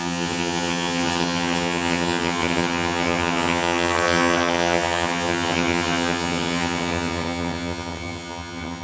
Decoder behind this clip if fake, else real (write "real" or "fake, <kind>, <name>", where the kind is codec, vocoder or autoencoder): fake, vocoder, HiFi-GAN